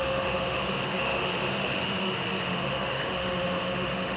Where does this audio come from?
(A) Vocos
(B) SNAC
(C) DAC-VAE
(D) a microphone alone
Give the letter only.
C